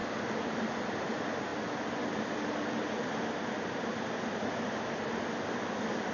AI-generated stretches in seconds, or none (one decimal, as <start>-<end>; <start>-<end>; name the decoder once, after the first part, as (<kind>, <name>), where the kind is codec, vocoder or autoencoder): 0.0-1.1 (vocoder, BigVGAN v2)